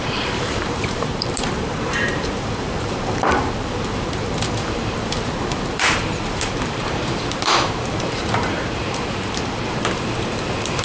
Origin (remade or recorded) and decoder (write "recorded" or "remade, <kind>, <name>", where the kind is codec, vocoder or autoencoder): remade, vocoder, BigVGAN v2